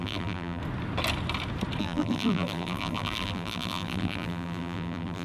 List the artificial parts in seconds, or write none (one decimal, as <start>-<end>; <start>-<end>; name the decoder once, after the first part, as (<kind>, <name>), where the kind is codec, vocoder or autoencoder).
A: 0.0-0.6 (vocoder, BigVGAN v2); 1.8-5.2